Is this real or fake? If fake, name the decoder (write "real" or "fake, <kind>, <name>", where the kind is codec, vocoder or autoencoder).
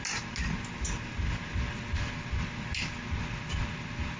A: real